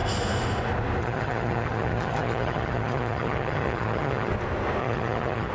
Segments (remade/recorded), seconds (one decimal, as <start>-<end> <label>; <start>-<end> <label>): 0.0-1.0 recorded; 1.0-4.3 remade; 4.3-4.8 recorded; 4.8-5.5 remade